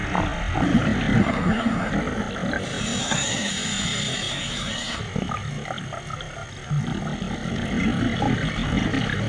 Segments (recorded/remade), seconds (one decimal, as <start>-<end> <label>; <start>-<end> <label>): 0.0-1.2 recorded; 1.2-1.9 remade; 1.9-3.0 recorded; 3.0-3.5 remade; 3.5-4.3 recorded; 4.3-5.0 remade; 5.0-9.3 recorded